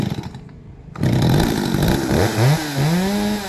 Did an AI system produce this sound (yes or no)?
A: no